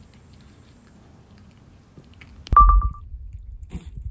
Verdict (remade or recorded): recorded